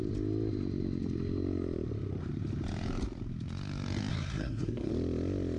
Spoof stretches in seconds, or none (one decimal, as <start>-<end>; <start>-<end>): 4.1-4.9